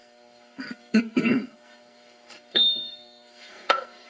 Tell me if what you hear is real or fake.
fake